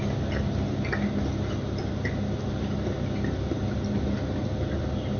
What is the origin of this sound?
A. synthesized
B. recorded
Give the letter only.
B